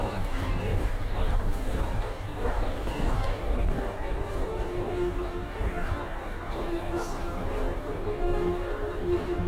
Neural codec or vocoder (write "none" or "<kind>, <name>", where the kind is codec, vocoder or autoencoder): codec, DAC